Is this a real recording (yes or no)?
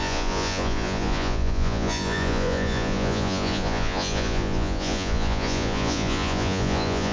no